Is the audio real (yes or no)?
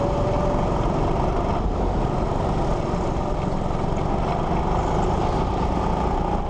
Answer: yes